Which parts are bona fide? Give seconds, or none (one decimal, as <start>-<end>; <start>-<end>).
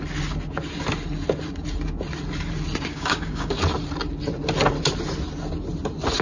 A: 0.0-2.9; 3.6-6.2